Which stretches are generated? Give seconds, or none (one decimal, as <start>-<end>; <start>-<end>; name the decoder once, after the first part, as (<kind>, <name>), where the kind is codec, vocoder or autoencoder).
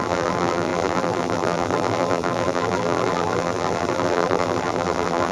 0.0-5.3 (vocoder, BigVGAN v2)